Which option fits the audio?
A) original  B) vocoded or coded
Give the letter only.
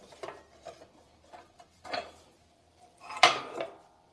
B